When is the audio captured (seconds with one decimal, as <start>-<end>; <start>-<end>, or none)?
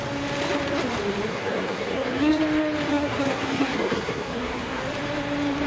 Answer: 0.0-1.3; 2.4-2.9; 4.8-5.7